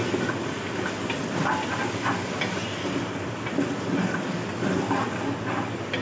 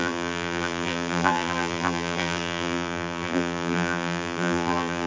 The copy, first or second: second